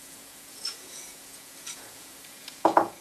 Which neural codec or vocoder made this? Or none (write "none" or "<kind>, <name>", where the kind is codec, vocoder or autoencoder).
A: vocoder, Vocos